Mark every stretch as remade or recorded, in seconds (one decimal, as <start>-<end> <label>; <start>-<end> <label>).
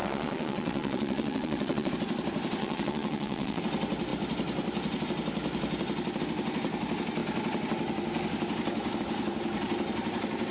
0.0-1.9 remade; 1.9-2.6 recorded; 2.6-3.6 remade; 3.6-10.5 recorded